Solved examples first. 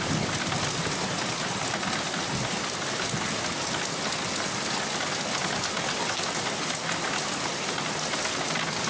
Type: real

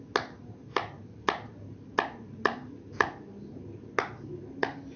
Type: real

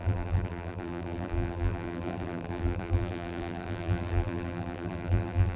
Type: fake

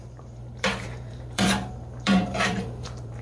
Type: fake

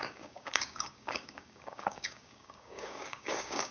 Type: fake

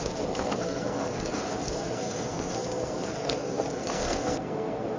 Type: fake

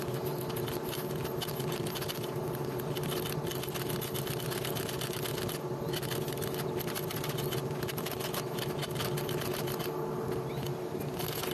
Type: real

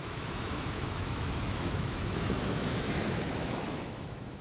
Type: fake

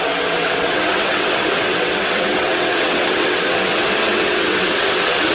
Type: fake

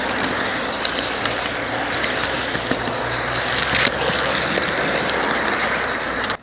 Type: real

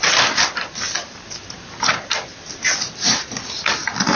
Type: real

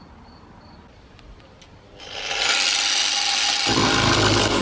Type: real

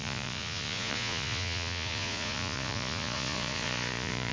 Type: fake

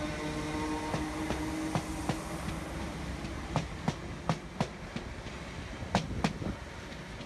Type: real